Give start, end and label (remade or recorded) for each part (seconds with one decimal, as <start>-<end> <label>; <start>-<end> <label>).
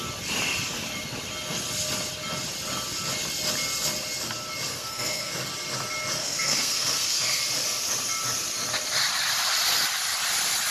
0.0-4.7 recorded; 4.7-5.3 remade; 5.3-6.2 recorded; 6.2-7.4 remade; 7.4-10.7 recorded